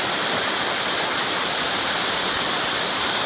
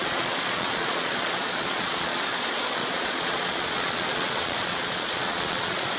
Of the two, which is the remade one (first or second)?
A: second